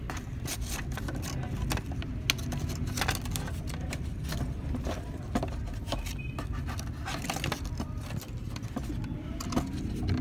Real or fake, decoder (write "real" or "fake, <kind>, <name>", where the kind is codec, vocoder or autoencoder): real